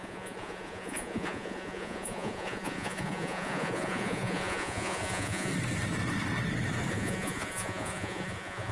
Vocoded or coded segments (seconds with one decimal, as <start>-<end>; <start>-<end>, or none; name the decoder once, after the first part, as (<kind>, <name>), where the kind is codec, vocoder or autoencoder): 0.0-5.5 (vocoder, Vocos); 6.9-8.7